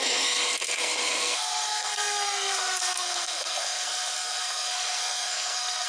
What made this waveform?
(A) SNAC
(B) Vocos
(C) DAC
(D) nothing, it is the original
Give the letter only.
A